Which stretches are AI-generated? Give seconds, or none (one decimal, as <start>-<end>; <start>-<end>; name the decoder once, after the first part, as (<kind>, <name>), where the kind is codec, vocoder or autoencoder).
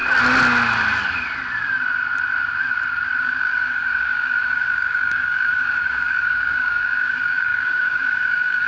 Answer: 3.2-8.7 (codec, DAC)